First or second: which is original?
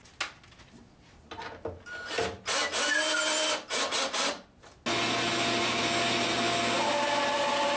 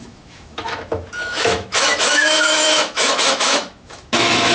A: first